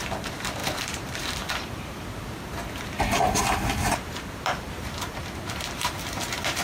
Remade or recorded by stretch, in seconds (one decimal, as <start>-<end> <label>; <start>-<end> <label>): 0.0-6.6 remade